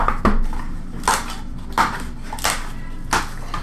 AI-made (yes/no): no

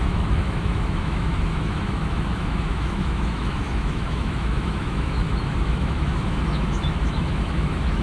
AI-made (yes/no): yes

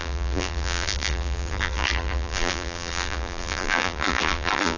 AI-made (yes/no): yes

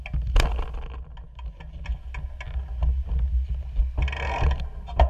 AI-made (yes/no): no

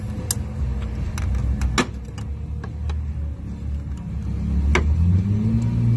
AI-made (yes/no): no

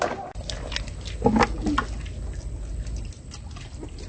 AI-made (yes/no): no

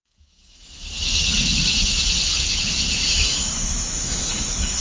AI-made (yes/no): yes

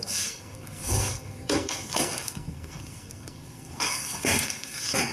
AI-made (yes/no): yes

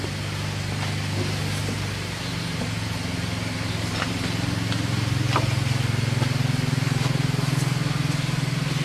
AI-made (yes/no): no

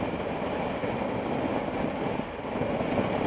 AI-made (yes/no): no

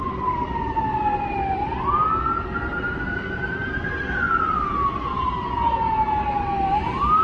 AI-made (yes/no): no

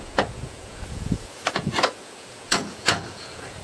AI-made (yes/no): yes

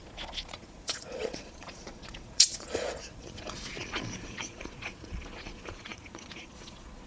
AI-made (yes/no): yes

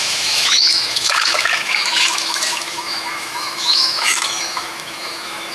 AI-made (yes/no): yes